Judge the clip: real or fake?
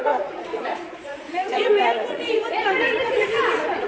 fake